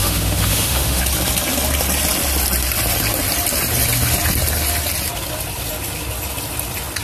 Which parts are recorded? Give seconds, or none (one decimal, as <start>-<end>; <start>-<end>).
1.0-7.0